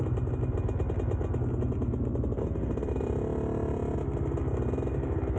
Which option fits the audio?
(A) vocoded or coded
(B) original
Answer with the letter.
B